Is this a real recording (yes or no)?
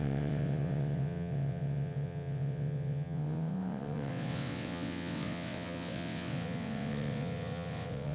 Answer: no